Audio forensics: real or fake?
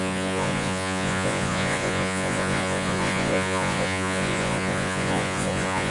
fake